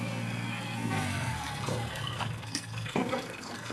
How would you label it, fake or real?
fake